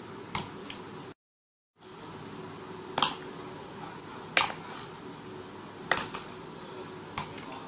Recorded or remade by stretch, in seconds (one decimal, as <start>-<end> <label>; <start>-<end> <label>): 0.0-7.7 recorded